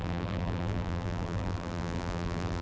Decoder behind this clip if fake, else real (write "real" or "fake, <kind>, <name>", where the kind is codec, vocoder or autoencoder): fake, vocoder, BigVGAN v2